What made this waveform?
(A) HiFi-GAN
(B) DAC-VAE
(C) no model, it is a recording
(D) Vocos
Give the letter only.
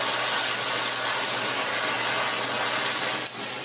C